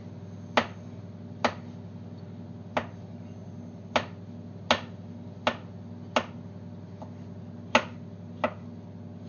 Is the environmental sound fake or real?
real